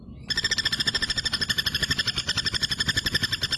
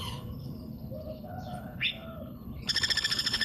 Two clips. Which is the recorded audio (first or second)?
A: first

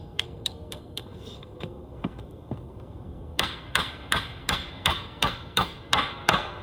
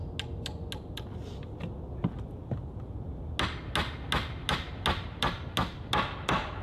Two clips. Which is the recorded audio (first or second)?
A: second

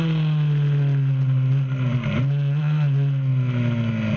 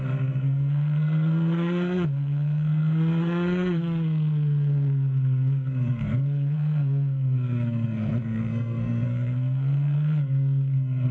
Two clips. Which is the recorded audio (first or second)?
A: first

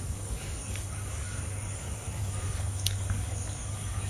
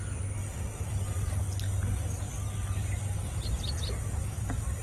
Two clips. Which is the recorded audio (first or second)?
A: second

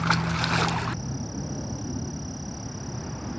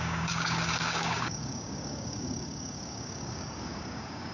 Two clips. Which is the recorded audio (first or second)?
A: first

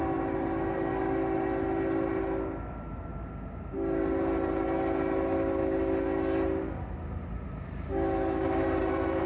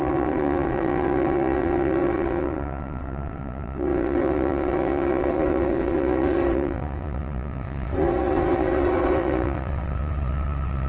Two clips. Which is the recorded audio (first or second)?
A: first